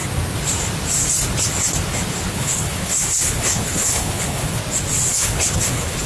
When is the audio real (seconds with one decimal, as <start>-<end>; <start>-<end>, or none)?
0.0-2.3; 4.6-5.1